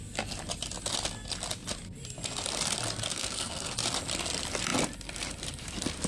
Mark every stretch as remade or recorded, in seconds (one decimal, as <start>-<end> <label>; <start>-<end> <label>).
0.0-3.1 recorded; 3.1-3.7 remade; 3.7-6.1 recorded